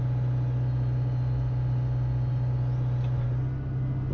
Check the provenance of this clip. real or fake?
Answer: real